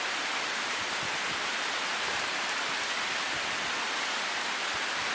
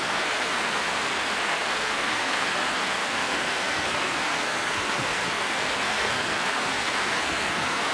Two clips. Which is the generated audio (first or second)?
second